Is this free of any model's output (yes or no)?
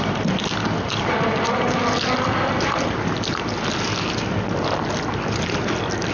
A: yes